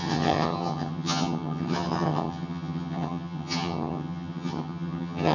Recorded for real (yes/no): no